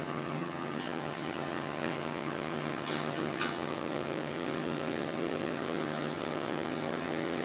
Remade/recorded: remade